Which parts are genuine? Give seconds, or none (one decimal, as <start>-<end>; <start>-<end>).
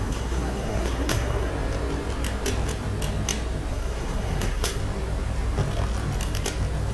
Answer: 1.5-3.7; 4.8-6.9